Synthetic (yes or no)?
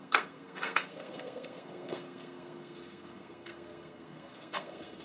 yes